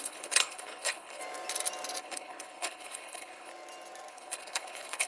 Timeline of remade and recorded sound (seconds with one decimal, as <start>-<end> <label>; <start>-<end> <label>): 0.0-1.2 remade; 1.2-2.0 recorded; 2.0-3.5 remade; 3.5-4.1 recorded; 4.1-5.1 remade